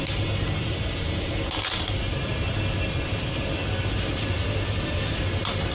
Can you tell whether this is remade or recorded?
recorded